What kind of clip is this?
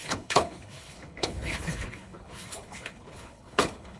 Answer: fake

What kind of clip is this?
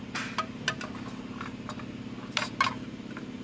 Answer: real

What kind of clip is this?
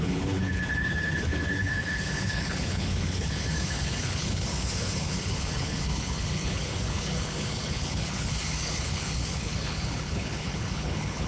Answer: fake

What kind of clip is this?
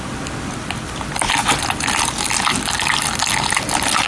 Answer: real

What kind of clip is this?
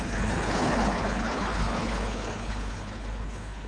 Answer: fake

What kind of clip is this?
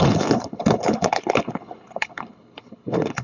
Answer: fake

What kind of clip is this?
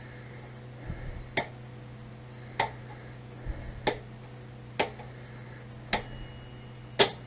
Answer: real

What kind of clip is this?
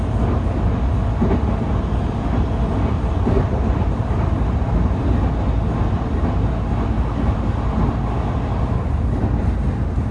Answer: real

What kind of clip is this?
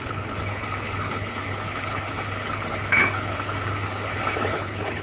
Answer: fake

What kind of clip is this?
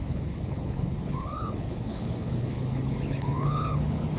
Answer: fake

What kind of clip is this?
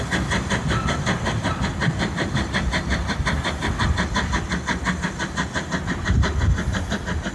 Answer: real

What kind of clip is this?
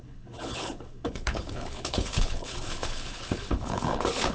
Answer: fake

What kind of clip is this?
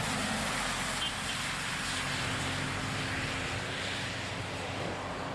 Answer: real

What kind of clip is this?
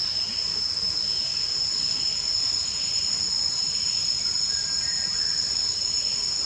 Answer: real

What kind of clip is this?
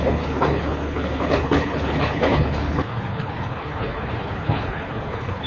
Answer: fake